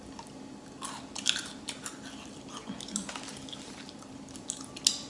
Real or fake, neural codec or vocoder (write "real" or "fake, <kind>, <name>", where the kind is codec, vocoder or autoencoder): real